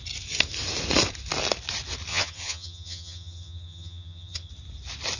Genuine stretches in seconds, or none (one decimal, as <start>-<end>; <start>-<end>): 0.0-2.1; 4.5-5.2

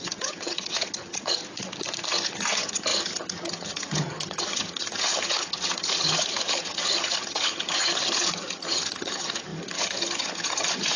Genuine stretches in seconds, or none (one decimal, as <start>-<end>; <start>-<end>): 1.4-2.1